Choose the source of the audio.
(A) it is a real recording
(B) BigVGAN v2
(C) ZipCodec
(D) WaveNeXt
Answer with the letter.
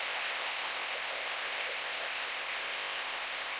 C